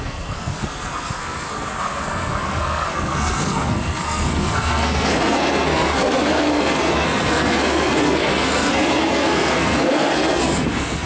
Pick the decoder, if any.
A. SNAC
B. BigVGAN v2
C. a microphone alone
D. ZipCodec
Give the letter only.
A